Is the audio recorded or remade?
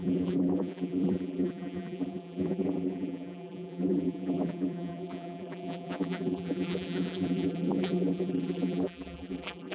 remade